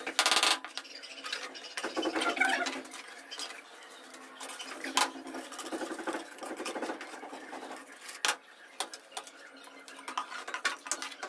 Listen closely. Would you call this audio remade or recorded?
recorded